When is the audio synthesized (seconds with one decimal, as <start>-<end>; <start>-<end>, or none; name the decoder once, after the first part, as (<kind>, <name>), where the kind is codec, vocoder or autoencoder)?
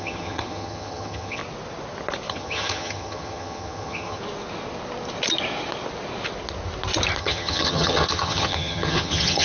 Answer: 0.0-1.4 (vocoder, HiFi-GAN); 2.3-4.2; 7.2-9.4